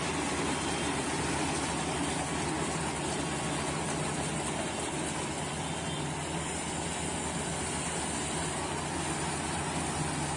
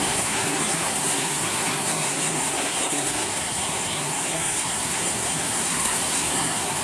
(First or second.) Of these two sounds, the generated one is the second